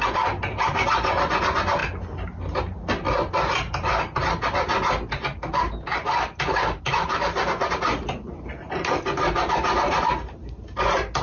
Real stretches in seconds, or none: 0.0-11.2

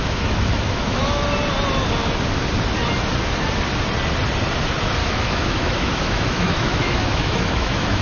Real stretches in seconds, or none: 1.0-5.0

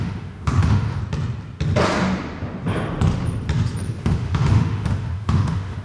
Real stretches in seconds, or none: 1.0-4.0

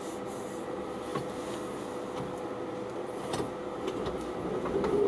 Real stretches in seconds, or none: 0.0-5.1

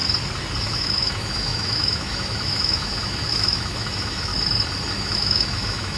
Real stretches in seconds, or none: 0.0-0.7; 4.3-4.9

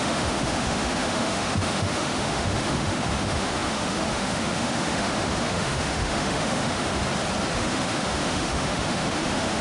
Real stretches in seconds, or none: 7.0-7.5

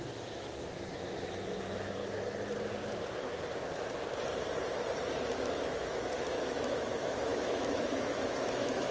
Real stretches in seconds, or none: 2.0-5.1

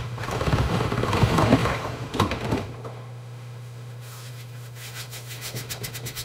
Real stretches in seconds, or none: none